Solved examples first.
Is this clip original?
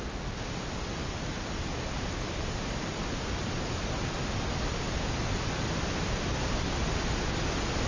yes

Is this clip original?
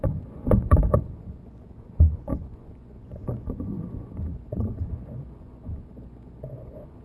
no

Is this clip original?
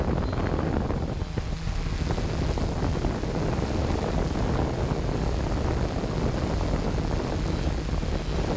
yes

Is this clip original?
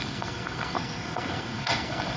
no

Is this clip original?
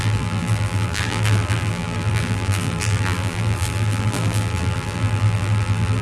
no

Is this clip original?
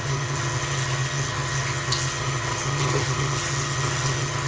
no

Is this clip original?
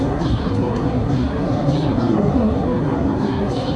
no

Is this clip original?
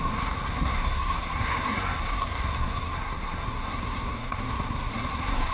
no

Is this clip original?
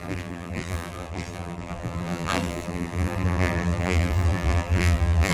no